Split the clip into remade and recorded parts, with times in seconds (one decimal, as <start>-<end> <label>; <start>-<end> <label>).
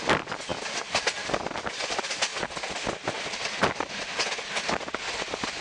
0.0-5.6 recorded